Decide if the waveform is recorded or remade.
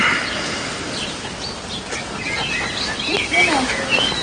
recorded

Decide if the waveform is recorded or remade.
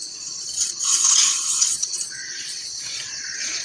remade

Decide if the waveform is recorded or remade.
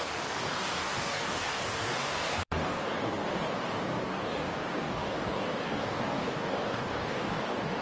remade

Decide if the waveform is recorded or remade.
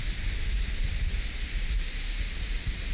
recorded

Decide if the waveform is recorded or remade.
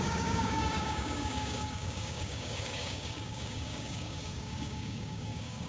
remade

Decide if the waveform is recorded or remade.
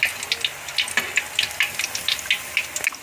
recorded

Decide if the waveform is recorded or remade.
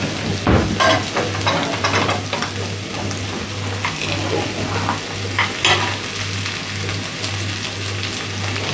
recorded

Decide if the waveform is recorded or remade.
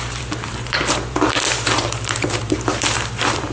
remade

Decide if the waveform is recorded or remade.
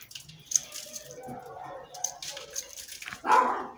recorded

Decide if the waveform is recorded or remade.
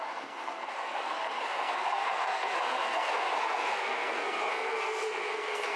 remade